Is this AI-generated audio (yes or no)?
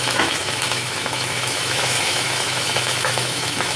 yes